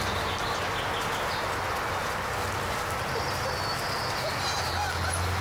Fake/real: real